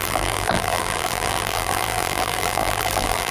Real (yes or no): no